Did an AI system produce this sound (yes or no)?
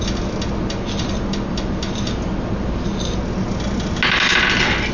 no